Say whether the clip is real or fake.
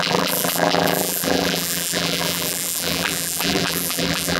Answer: fake